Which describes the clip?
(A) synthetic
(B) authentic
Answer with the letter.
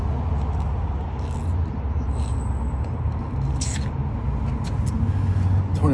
B